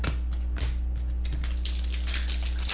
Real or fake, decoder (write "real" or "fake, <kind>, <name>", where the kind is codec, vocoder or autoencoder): real